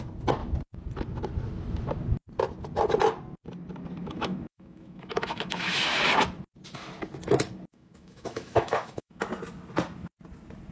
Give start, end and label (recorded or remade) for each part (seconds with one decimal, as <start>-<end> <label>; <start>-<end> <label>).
0.0-4.0 recorded; 4.0-5.8 remade; 5.8-7.7 recorded; 7.7-9.3 remade; 9.3-10.7 recorded